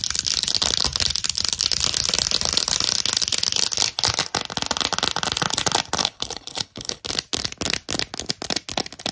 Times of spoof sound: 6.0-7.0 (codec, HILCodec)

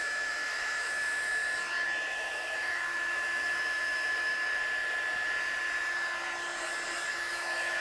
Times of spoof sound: 0.0-1.4 (autoencoder, DAC-VAE); 2.1-4.3; 7.1-7.8